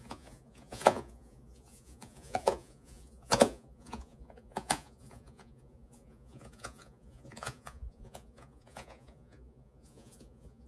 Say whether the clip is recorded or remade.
remade